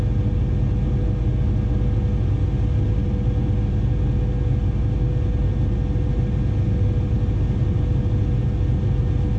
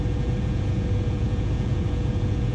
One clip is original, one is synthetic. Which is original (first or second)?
first